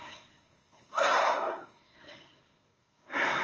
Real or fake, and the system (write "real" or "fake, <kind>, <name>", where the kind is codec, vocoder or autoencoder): fake, codec, SNAC